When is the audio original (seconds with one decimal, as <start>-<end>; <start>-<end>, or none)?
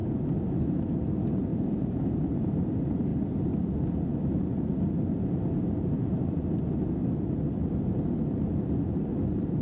1.1-1.5; 2.7-3.1; 4.7-7.0; 8.2-9.6